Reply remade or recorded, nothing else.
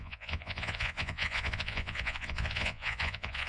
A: remade